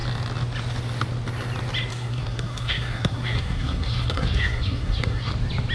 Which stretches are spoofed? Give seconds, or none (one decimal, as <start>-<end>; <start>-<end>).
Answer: 1.9-5.3